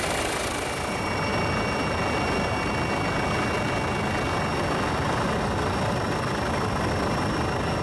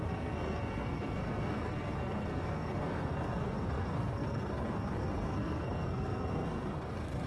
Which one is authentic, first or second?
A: first